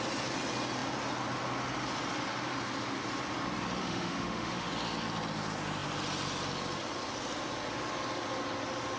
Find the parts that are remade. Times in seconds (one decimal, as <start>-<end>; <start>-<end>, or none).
3.8-4.7